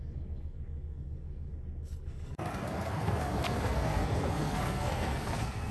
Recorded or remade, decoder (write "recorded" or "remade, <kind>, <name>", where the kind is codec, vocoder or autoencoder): remade, codec, SNAC